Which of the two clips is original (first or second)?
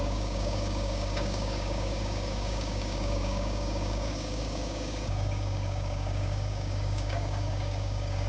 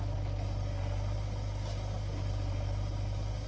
second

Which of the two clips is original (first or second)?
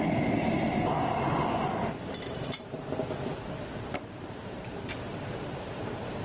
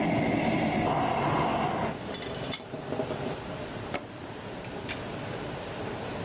second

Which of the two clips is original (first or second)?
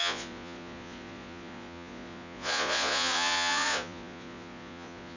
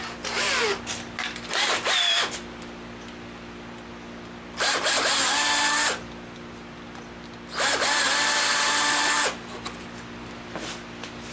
second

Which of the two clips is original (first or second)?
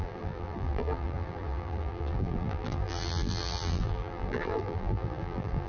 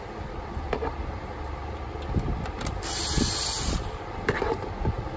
second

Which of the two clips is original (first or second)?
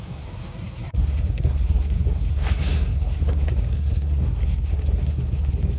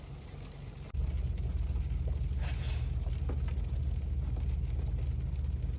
second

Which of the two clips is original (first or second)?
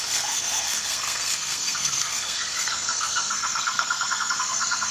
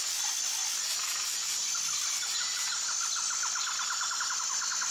second